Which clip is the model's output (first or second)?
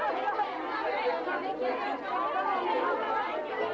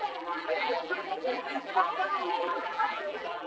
second